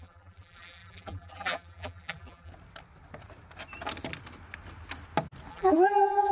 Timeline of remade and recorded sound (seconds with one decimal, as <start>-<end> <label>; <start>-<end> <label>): 0.0-2.5 remade; 2.5-5.5 recorded; 5.5-6.3 remade